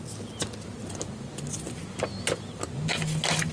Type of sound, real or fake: real